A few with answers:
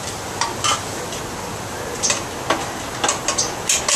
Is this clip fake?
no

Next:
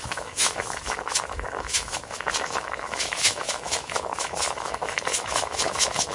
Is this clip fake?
yes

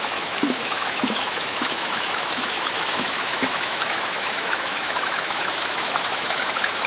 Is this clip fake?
yes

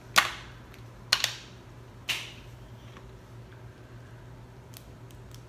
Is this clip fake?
no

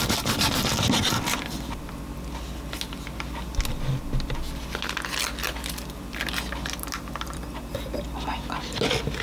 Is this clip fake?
no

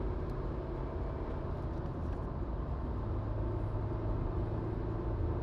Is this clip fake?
no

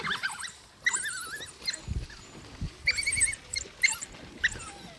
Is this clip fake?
no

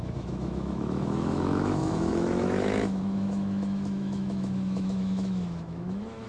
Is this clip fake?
yes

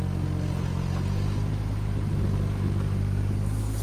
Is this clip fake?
no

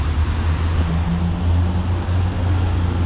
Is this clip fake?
no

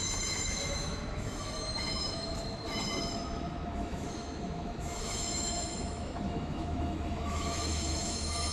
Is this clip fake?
yes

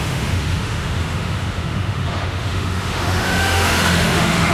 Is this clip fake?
yes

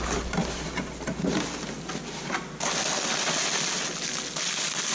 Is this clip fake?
no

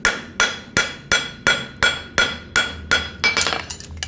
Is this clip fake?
no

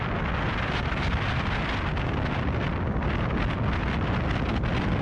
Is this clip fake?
no